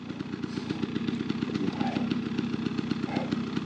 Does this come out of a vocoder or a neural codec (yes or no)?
no